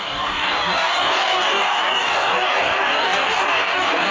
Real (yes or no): no